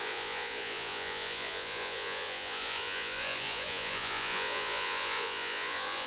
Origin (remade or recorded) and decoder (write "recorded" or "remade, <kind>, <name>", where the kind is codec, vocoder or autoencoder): remade, vocoder, Vocos